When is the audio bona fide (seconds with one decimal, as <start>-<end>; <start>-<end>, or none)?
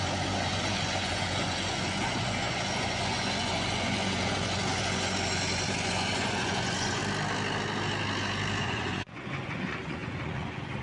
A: 7.0-8.6